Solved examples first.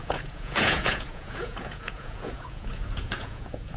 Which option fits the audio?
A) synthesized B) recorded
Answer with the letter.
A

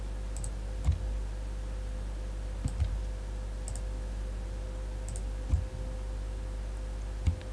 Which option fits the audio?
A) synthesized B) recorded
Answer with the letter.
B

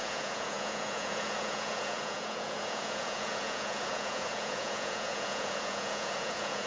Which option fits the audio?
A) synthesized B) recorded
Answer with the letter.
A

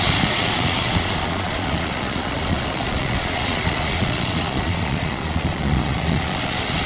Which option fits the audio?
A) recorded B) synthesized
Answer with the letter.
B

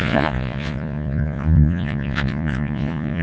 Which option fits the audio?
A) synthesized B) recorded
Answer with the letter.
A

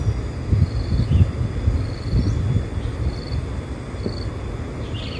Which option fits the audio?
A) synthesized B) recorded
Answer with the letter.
B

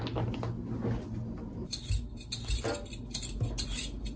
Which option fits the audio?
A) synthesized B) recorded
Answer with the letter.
B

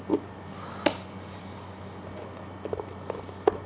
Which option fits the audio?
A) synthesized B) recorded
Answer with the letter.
B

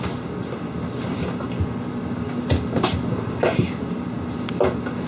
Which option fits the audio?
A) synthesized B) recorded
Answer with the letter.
B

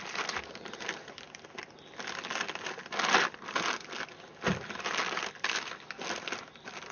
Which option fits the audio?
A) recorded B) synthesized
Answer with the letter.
A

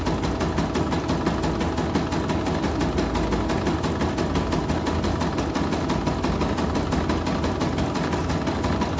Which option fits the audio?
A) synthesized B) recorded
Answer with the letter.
B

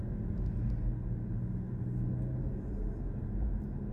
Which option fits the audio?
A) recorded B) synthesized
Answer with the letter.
A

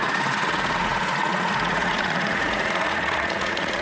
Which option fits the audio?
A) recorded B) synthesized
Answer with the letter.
B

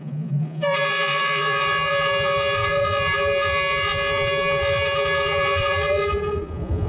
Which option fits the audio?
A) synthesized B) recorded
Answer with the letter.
A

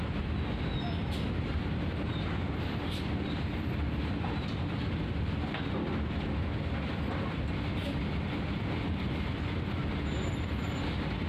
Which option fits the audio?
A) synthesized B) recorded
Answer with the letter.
B